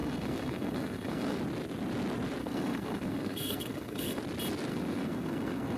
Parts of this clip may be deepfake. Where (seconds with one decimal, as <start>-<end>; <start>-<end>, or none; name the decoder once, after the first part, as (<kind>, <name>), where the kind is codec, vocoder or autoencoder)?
0.0-1.4 (codec, SNAC); 2.4-4.2; 4.7-5.8